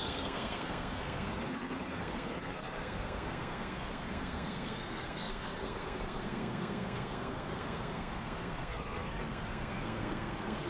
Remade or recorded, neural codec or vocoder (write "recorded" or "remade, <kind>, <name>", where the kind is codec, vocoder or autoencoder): remade, codec, SNAC